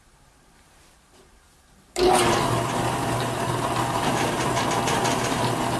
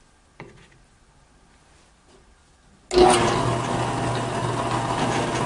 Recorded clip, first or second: second